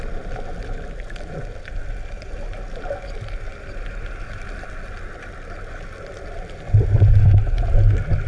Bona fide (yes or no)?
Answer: yes